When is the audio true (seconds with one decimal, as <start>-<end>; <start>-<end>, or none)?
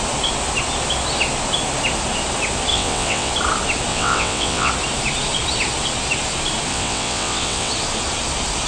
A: 0.0-2.7; 3.3-3.9; 4.7-6.7; 7.7-8.7